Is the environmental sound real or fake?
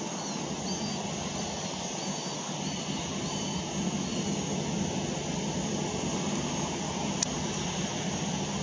real